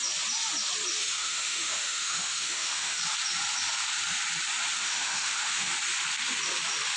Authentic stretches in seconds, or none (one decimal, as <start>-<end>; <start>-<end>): 0.0-1.0; 3.0-4.8; 5.7-7.0